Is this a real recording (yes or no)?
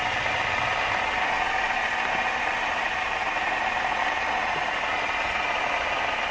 yes